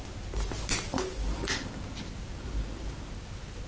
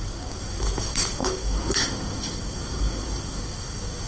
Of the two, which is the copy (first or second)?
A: second